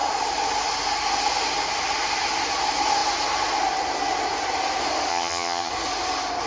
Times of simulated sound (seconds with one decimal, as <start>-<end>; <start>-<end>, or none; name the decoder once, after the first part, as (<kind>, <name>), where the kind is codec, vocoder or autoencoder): 5.1-5.7 (vocoder, HiFi-GAN)